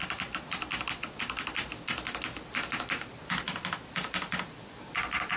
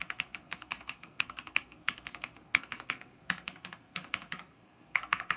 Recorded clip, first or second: first